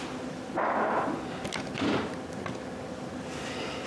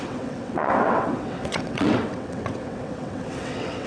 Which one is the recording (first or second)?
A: first